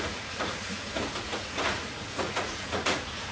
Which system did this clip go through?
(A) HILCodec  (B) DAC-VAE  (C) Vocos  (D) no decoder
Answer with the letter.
C